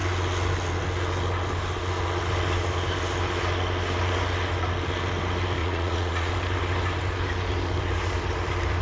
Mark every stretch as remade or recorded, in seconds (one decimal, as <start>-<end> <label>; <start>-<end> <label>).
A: 0.0-5.6 recorded; 5.6-6.3 remade; 6.3-8.8 recorded